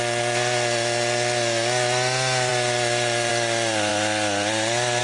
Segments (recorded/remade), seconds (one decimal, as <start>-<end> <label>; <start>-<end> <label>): 0.0-5.0 recorded